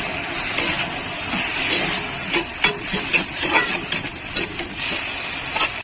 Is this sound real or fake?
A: real